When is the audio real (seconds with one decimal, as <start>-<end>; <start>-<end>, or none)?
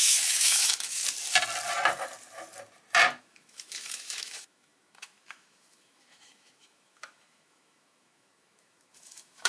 1.0-3.2